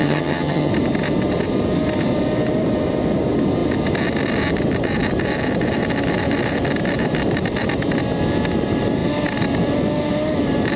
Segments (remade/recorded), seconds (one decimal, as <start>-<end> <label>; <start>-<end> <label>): 0.0-0.7 remade; 0.7-10.8 recorded